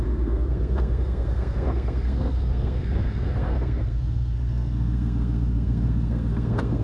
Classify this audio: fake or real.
fake